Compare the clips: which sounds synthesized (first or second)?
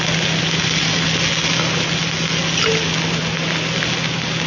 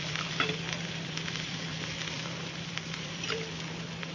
second